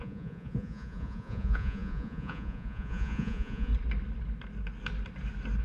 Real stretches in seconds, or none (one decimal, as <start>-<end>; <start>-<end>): 3.7-5.6